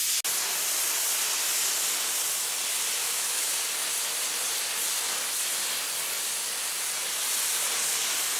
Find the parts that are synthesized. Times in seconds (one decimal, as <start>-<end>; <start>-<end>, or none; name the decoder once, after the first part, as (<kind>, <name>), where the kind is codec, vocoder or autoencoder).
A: 3.0-3.5 (autoencoder, DAC-VAE)